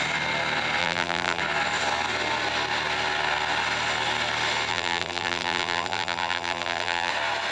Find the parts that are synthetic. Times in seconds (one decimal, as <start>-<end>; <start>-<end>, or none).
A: 0.8-1.4; 4.7-7.1